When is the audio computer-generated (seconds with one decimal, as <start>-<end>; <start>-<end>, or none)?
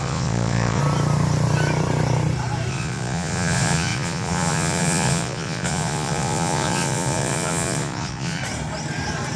0.0-0.8; 2.7-8.4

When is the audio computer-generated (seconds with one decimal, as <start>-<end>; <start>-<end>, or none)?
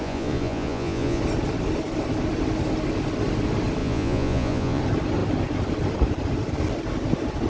0.0-1.2; 3.8-4.8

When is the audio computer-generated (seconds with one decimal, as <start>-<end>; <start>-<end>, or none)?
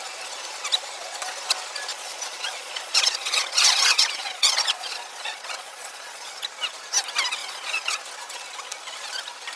1.9-6.3; 7.4-8.0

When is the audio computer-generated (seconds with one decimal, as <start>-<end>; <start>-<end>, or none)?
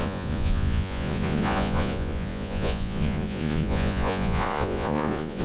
0.0-5.4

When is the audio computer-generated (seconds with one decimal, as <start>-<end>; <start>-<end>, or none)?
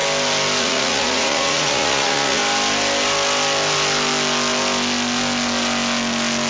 0.6-2.4